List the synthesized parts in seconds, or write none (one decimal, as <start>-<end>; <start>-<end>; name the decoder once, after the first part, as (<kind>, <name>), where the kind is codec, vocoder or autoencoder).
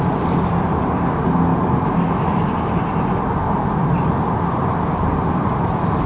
none